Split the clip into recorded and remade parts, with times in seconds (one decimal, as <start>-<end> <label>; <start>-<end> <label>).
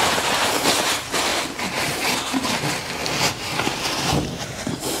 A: 0.0-1.3 remade; 1.3-2.5 recorded; 2.5-3.0 remade; 3.0-3.7 recorded; 3.7-5.0 remade